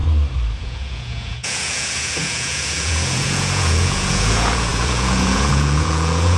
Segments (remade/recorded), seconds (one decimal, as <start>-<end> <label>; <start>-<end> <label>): 0.0-0.6 recorded; 0.6-6.4 remade